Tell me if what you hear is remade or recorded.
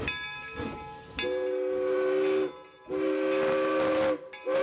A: recorded